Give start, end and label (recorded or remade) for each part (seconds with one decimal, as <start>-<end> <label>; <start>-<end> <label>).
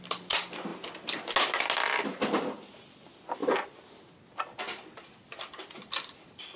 0.0-3.4 recorded; 3.4-6.6 remade